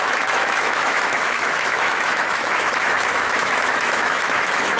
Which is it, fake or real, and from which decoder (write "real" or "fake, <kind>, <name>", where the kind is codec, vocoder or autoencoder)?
fake, autoencoder, DAC-VAE